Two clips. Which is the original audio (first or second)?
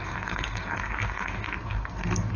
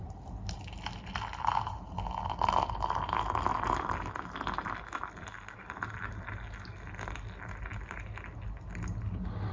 second